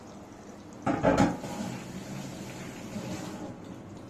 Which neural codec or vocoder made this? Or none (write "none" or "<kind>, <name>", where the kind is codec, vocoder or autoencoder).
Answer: none